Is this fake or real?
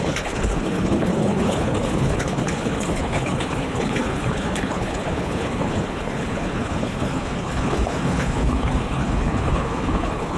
fake